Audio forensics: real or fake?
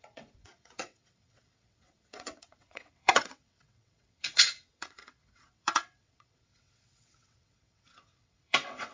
fake